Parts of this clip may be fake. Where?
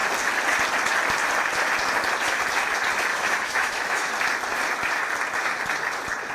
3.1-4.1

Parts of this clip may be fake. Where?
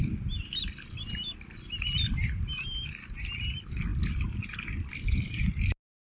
none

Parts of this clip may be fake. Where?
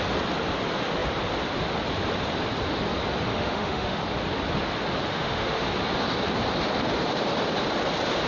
3.3-4.0; 5.1-5.7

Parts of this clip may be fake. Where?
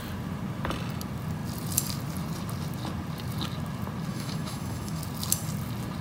4.1-5.0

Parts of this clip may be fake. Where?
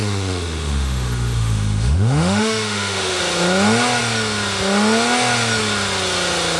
0.0-3.2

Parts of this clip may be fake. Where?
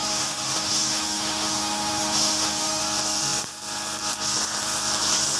0.0-2.8